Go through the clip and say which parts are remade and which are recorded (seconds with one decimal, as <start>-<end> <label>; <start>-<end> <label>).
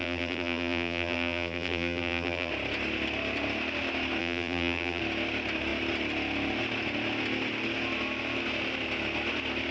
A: 0.0-2.5 remade; 2.5-4.2 recorded; 4.2-5.0 remade; 5.0-9.7 recorded